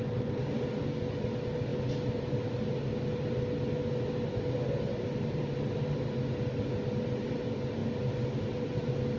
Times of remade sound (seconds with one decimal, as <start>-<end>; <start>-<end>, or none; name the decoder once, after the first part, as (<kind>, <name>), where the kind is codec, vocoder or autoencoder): none